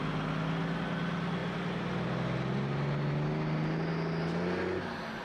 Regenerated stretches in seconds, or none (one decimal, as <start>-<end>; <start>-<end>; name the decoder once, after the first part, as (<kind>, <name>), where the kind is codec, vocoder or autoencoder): none